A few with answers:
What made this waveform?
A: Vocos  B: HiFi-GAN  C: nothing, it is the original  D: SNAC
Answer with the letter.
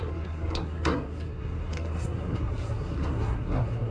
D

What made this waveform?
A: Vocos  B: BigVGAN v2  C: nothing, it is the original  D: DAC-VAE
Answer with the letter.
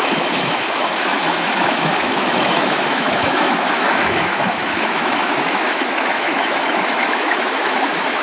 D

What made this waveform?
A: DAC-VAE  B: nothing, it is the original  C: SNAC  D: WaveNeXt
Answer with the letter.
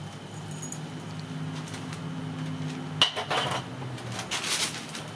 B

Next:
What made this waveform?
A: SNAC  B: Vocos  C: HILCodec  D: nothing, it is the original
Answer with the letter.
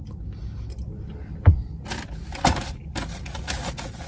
D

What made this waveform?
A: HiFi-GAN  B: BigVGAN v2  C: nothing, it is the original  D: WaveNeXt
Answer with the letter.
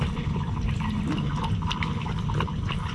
C